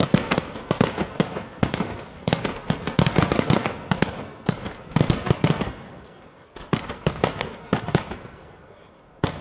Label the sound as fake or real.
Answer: fake